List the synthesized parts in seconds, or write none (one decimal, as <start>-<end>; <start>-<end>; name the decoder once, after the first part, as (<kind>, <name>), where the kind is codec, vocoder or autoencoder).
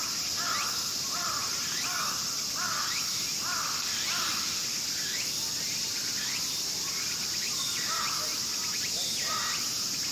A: none